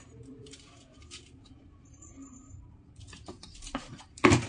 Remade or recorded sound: remade